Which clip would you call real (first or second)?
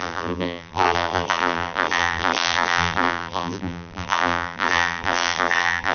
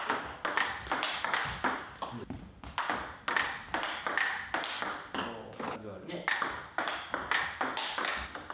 second